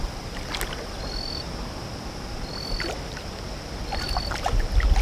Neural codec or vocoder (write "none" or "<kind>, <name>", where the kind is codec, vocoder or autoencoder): none